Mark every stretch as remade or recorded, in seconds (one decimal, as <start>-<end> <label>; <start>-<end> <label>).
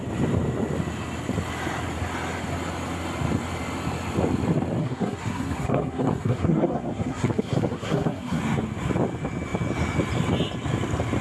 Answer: 0.0-4.8 recorded; 4.8-8.4 remade; 8.4-11.2 recorded